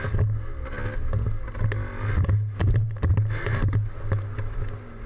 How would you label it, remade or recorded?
recorded